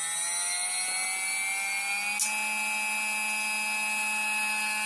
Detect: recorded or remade recorded